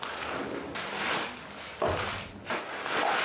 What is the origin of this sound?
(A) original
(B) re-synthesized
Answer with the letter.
A